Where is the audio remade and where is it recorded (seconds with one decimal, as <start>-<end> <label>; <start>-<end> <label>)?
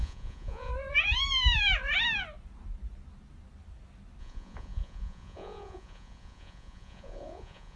0.0-0.7 remade; 0.7-4.2 recorded; 4.2-7.8 remade